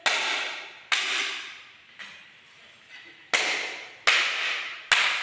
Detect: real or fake real